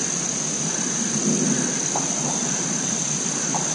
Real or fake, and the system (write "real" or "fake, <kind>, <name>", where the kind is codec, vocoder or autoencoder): real